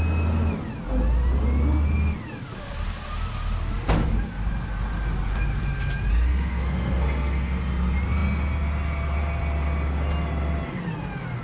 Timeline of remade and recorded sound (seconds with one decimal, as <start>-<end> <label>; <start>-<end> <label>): 0.0-6.1 recorded; 6.1-7.6 remade; 7.6-11.4 recorded